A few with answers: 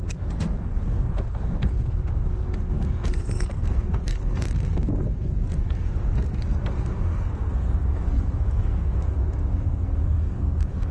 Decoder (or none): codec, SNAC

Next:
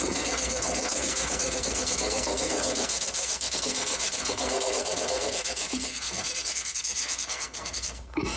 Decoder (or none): codec, SNAC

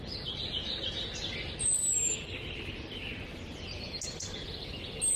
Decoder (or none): none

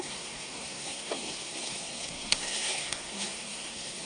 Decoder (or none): codec, SNAC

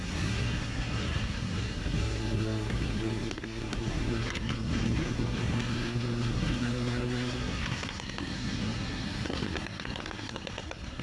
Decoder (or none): codec, SNAC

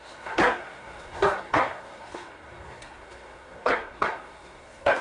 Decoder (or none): codec, SNAC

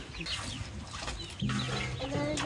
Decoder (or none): none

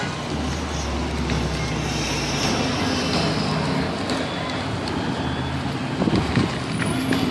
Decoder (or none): none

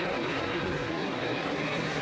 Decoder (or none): codec, SNAC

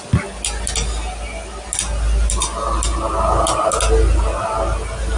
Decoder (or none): none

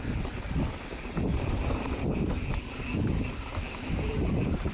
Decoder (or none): none